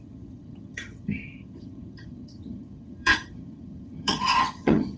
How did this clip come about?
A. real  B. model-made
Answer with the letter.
B